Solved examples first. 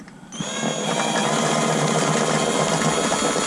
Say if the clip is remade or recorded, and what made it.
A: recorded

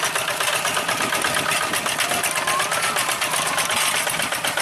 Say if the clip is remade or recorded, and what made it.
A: recorded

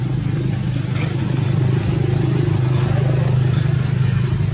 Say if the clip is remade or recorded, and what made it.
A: recorded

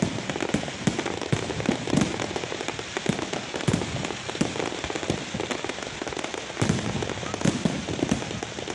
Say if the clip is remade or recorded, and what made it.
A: recorded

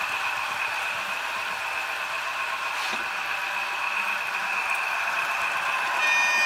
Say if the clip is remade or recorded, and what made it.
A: recorded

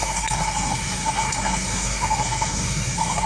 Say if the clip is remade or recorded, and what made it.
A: remade, codec, SNAC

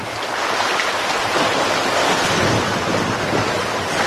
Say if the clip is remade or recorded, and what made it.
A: recorded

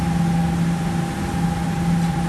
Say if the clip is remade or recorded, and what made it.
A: recorded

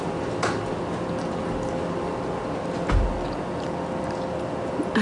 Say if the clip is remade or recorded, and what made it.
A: recorded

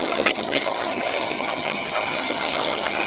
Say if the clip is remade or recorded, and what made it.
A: remade, vocoder, HiFi-GAN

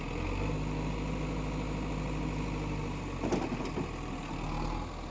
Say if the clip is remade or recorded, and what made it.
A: recorded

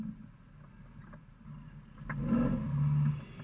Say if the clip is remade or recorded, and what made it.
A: recorded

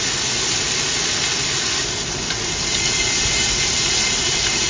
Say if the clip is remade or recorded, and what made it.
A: recorded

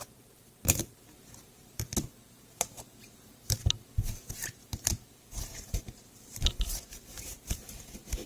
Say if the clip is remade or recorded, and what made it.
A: remade, vocoder, BigVGAN v2